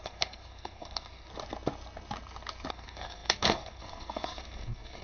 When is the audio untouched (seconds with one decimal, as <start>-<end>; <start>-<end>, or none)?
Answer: 1.3-2.7

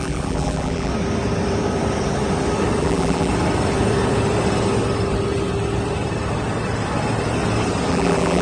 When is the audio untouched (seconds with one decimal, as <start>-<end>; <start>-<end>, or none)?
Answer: 0.9-2.8; 3.3-7.9

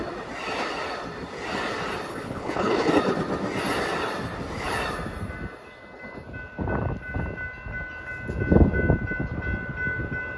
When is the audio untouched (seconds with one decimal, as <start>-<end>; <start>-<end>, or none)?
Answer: 0.0-2.1; 2.9-10.4